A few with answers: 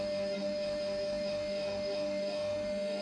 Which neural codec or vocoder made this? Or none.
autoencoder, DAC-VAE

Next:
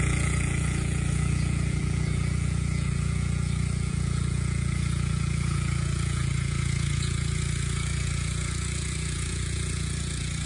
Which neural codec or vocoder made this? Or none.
vocoder, Vocos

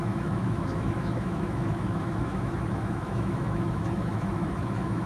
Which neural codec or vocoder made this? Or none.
autoencoder, DAC-VAE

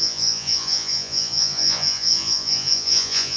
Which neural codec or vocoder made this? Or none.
vocoder, Vocos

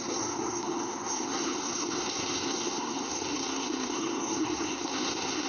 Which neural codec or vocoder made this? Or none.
codec, SNAC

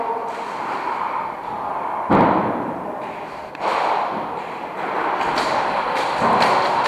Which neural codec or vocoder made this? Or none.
none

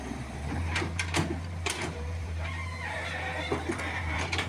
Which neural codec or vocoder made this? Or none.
vocoder, BigVGAN v2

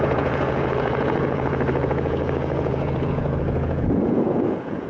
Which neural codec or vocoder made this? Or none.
vocoder, Vocos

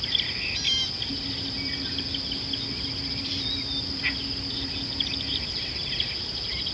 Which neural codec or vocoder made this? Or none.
none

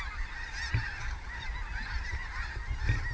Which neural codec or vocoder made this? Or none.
none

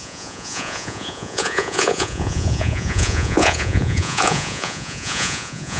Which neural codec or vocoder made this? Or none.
vocoder, Vocos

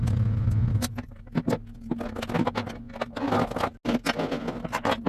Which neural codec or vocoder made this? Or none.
none